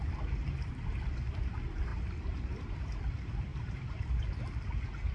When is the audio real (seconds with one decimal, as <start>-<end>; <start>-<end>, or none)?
0.0-3.5; 4.2-5.1